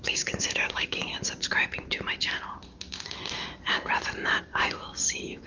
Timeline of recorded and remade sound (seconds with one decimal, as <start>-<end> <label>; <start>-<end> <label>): 0.0-1.1 remade; 1.1-4.4 recorded; 4.4-5.5 remade